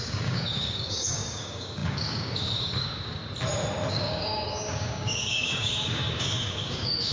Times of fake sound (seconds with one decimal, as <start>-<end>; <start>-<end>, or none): 0.0-3.2; 3.9-7.1